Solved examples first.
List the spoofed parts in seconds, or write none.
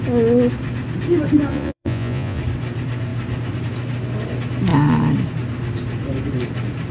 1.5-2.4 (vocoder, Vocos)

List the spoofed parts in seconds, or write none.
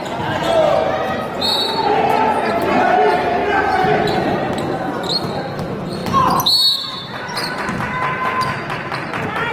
none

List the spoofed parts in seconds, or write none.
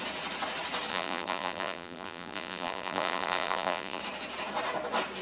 0.9-4.0 (vocoder, BigVGAN v2)